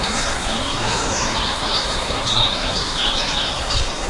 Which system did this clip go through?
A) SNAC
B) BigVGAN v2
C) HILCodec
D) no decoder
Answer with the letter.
A